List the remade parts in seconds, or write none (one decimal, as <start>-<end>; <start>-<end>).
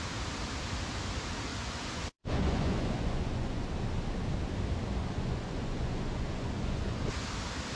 1.5-3.7; 5.0-7.0